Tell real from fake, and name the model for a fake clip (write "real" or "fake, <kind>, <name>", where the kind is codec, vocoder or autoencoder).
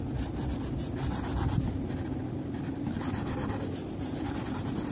real